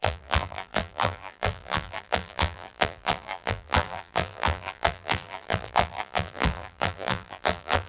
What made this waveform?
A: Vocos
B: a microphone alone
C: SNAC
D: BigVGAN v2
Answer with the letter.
D